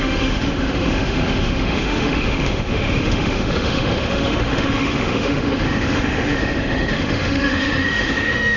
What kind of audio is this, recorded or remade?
remade